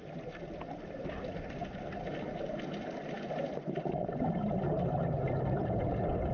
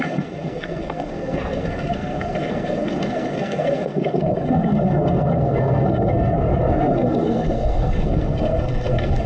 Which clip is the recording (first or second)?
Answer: first